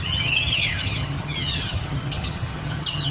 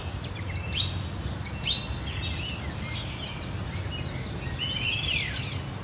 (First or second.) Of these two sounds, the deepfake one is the first